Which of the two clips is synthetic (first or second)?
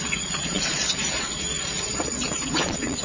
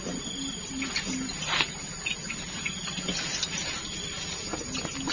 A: first